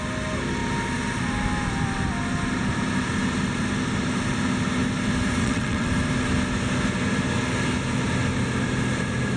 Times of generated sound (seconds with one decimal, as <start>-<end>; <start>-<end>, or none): 5.4-5.9